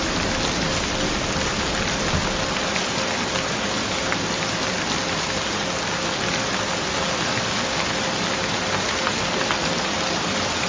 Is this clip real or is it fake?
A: real